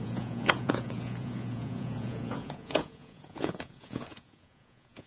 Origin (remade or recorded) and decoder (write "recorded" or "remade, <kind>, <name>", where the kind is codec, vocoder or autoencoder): remade, vocoder, Vocos